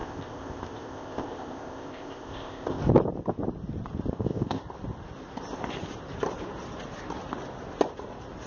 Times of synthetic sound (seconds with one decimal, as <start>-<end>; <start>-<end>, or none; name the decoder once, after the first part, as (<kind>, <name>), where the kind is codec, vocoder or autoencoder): 0.0-2.8 (codec, ZipCodec); 4.1-4.6